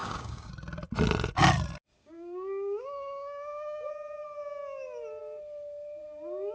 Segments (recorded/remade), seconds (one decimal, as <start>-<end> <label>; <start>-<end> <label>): 0.0-0.5 remade; 0.5-2.0 recorded; 2.0-3.9 remade; 3.9-6.5 recorded